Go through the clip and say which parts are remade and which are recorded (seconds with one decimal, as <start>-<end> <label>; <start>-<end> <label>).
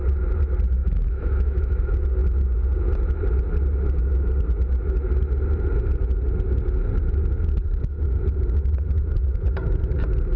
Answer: 0.0-0.8 recorded; 0.8-1.8 remade; 1.8-10.4 recorded